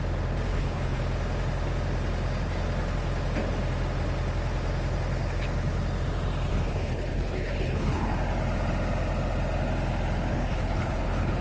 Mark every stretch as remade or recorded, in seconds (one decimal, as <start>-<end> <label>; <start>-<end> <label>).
0.0-0.5 recorded; 0.5-1.0 remade; 1.0-6.5 recorded; 6.5-8.0 remade; 8.0-10.3 recorded; 10.3-11.4 remade